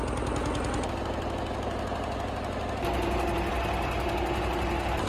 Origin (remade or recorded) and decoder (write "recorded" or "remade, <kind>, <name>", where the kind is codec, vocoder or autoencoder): recorded